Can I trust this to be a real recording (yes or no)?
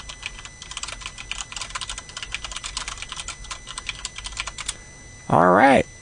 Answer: yes